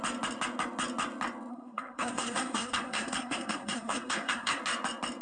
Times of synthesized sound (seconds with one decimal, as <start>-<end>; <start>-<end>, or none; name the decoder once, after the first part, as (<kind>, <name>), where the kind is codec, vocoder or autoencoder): 1.5-4.6 (codec, SNAC)